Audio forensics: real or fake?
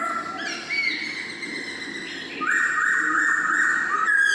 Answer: real